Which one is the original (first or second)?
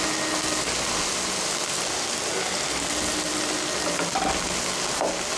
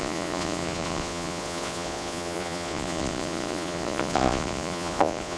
first